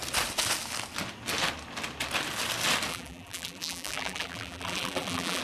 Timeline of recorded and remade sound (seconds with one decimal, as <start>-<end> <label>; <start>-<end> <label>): 0.0-2.9 recorded; 2.9-5.4 remade